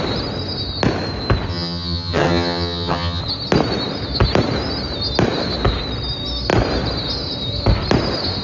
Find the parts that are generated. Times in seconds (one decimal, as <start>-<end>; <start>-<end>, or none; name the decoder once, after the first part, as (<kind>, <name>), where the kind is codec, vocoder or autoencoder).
1.5-3.2 (vocoder, HiFi-GAN)